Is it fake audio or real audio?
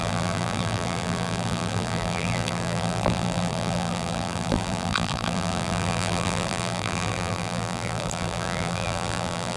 fake